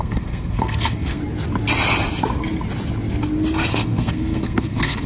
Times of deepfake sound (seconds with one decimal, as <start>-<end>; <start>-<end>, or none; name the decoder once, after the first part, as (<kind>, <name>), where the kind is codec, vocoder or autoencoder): 0.0-1.2 (codec, SNAC); 3.7-5.1